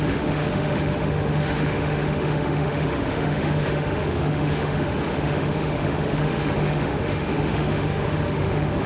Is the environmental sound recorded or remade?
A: remade